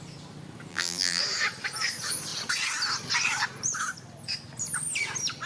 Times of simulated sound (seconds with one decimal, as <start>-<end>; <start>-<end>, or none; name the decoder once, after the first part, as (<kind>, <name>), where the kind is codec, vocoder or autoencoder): 0.7-1.2 (vocoder, BigVGAN v2)